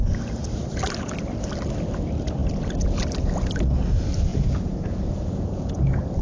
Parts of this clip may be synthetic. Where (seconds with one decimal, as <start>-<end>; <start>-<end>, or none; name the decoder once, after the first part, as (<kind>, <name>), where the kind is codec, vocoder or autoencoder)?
4.3-5.7 (vocoder, Vocos)